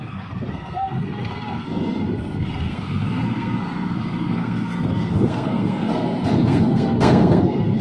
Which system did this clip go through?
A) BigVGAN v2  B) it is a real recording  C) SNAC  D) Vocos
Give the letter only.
C